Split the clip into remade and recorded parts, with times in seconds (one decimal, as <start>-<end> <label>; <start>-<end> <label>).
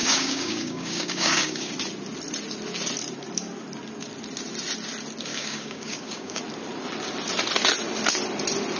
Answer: 0.0-1.7 remade; 1.7-5.3 recorded; 5.3-6.4 remade; 6.4-8.8 recorded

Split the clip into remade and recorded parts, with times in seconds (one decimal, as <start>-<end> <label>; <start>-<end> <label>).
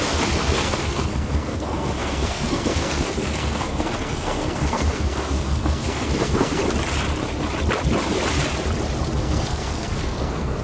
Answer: 0.0-6.6 remade; 6.6-9.2 recorded; 9.2-10.6 remade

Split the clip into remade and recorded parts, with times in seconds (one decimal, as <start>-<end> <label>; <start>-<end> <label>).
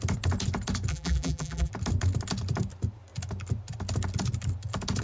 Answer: 0.0-0.9 recorded; 0.9-1.7 remade; 1.7-5.0 recorded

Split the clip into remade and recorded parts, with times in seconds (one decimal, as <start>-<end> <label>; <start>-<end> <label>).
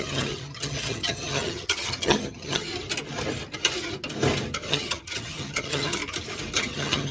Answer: 0.0-2.7 remade; 2.7-4.7 recorded; 4.7-6.0 remade; 6.0-6.6 recorded; 6.6-7.1 remade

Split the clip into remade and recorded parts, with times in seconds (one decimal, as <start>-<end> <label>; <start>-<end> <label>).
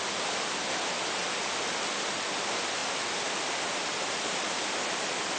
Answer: 0.0-1.2 recorded; 1.2-2.0 remade; 2.0-5.4 recorded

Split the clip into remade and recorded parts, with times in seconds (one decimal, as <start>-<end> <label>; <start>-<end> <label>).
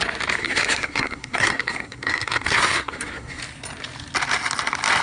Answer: 0.0-0.4 recorded; 0.4-3.4 remade; 3.4-5.0 recorded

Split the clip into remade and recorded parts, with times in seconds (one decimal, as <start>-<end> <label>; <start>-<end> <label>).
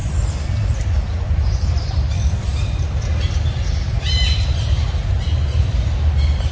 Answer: 0.0-1.7 remade; 1.7-6.5 recorded